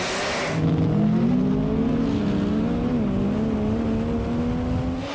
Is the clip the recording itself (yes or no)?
yes